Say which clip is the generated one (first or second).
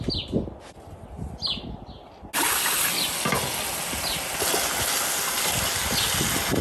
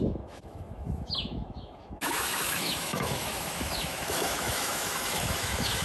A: second